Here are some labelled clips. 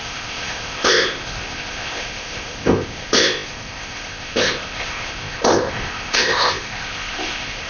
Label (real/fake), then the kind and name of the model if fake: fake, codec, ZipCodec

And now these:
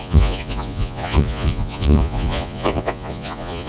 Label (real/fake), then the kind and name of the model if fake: fake, vocoder, Vocos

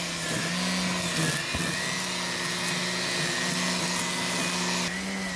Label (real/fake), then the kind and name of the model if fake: real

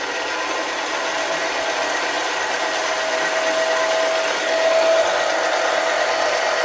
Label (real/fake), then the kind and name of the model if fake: real